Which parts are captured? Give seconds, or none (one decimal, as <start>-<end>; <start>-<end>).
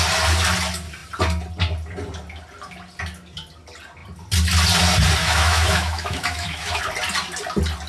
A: 0.0-5.2; 6.8-7.9